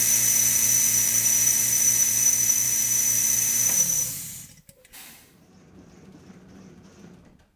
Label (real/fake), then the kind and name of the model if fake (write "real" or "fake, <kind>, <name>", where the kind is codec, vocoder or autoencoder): fake, vocoder, BigVGAN v2